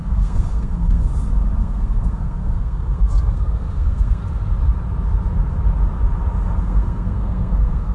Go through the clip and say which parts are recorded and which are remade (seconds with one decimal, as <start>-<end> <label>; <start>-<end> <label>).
0.0-1.1 remade; 1.1-1.6 recorded; 1.6-4.2 remade; 4.2-6.6 recorded; 6.6-7.9 remade